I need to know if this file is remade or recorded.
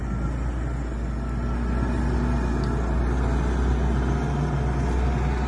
recorded